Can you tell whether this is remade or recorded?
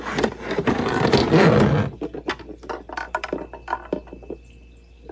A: recorded